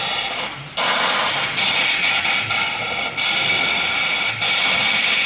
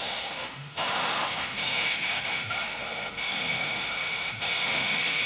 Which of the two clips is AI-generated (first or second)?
second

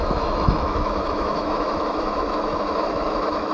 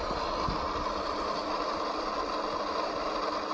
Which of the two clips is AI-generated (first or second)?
first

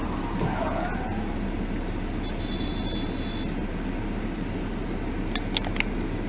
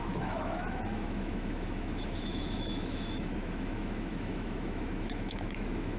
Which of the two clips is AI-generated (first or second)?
second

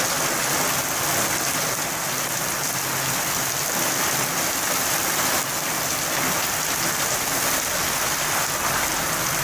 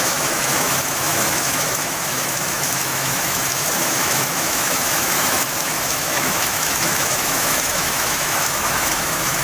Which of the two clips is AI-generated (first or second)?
second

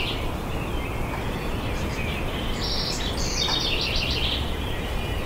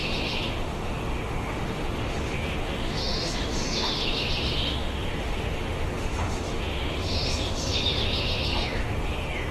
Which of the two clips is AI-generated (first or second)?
second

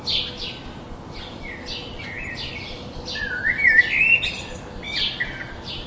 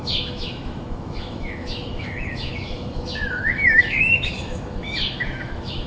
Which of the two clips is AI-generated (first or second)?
second